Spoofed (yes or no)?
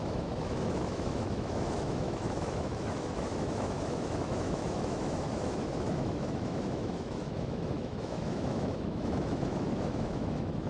yes